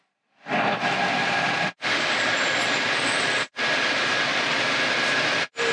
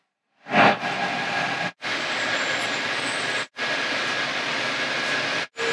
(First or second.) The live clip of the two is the second